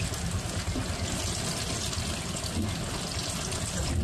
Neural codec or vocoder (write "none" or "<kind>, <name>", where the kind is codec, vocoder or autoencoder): none